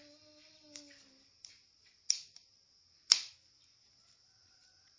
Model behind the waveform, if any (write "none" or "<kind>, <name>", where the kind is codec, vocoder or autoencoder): none